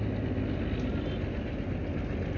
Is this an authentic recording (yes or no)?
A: yes